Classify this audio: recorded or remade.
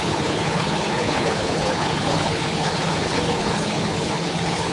remade